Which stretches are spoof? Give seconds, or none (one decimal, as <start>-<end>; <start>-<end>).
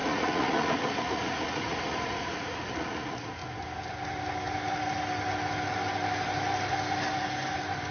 0.0-3.4